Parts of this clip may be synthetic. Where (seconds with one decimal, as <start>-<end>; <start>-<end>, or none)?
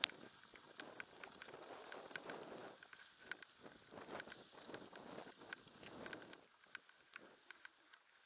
none